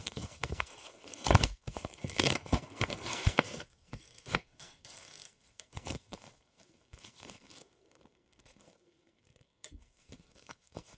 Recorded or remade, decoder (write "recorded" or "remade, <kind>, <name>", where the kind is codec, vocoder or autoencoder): remade, codec, SNAC